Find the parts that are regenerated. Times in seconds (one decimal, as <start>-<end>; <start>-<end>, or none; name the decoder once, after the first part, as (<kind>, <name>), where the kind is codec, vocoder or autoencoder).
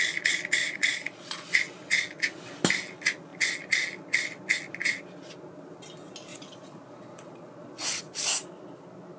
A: 0.6-1.5 (vocoder, Vocos); 6.3-8.0